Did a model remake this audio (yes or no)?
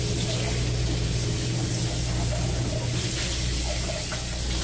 no